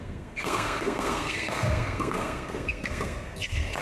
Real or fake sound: fake